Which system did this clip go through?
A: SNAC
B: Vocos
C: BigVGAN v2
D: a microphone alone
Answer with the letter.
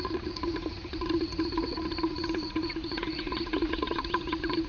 B